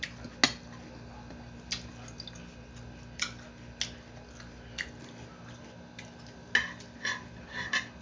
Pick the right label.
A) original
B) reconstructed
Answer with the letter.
A